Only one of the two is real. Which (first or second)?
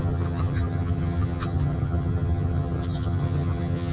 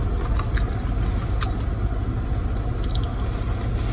second